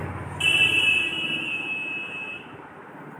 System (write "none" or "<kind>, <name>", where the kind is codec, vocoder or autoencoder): none